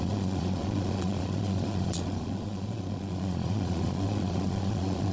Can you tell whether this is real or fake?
fake